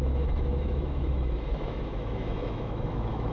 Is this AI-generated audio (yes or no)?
yes